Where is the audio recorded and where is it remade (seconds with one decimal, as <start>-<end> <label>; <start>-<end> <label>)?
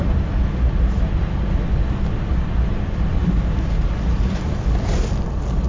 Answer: 0.0-2.3 recorded; 2.3-5.7 remade